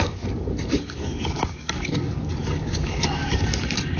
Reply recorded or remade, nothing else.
remade